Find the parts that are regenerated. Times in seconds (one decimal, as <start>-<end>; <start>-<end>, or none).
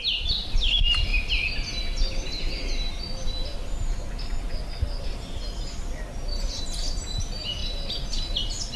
none